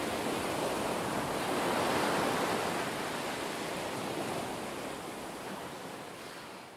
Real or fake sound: real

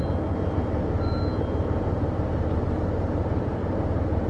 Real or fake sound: real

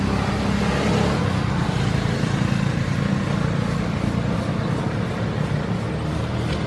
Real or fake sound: real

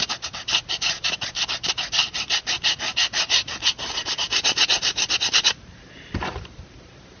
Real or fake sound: fake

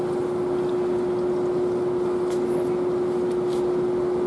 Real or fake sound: real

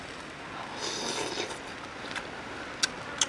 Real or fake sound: real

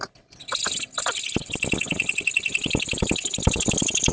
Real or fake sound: fake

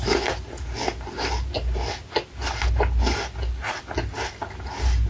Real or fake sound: real